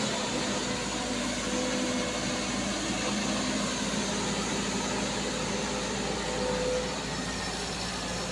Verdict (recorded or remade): recorded